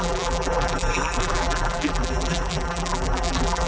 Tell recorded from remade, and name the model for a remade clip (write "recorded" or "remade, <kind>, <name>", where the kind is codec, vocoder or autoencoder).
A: remade, vocoder, BigVGAN v2